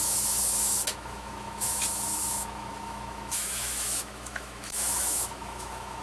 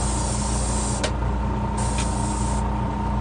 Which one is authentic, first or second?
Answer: second